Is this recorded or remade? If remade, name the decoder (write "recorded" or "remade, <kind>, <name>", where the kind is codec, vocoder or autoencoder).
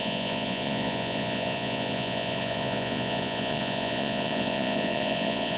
remade, vocoder, Vocos